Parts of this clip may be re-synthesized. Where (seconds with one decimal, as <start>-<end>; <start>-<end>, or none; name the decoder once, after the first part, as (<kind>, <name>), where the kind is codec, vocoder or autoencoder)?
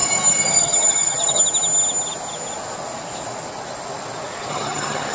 0.6-1.4 (vocoder, HiFi-GAN); 4.5-5.1